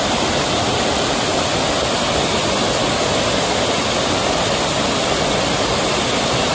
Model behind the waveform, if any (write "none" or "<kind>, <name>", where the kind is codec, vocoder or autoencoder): none